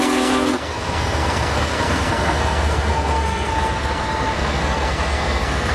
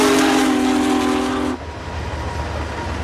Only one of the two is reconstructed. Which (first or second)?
first